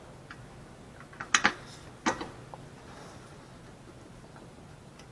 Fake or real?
real